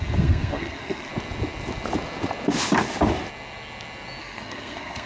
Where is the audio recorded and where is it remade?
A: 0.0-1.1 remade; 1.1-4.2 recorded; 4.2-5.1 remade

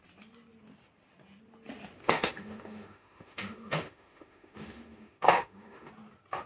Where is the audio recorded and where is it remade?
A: 0.0-2.0 recorded; 2.0-5.9 remade; 5.9-6.5 recorded

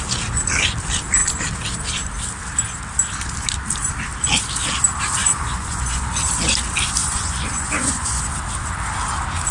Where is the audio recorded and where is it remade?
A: 0.0-5.2 recorded; 5.2-6.0 remade; 6.0-7.0 recorded; 7.0-8.2 remade; 8.2-9.5 recorded

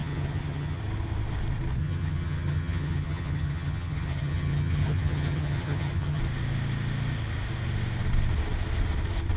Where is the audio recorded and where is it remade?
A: 0.0-0.8 remade; 0.8-1.8 recorded; 1.8-6.2 remade; 6.2-9.4 recorded

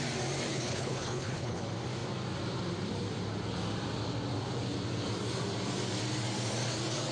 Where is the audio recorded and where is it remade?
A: 0.0-0.5 recorded; 0.5-1.6 remade; 1.6-7.1 recorded

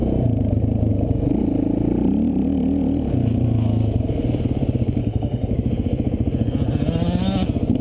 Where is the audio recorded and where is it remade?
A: 0.0-5.0 recorded; 5.0-5.5 remade; 5.5-7.8 recorded

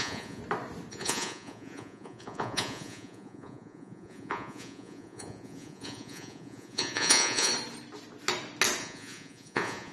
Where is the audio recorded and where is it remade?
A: 0.0-0.4 remade; 0.4-0.9 recorded; 0.9-7.5 remade; 7.5-8.8 recorded; 8.8-9.9 remade

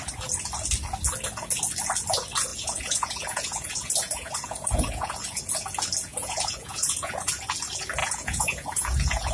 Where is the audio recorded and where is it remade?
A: 0.0-2.5 recorded; 2.5-5.4 remade; 5.4-6.1 recorded; 6.1-7.3 remade; 7.3-8.0 recorded; 8.0-9.3 remade